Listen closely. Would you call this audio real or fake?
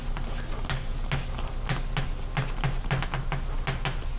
real